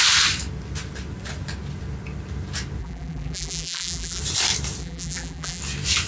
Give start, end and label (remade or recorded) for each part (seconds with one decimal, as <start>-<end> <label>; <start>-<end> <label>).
0.0-2.8 recorded; 2.8-4.2 remade; 4.2-4.8 recorded; 4.8-5.6 remade; 5.6-6.1 recorded